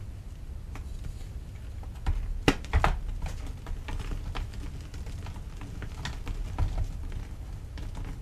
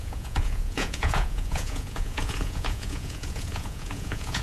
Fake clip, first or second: second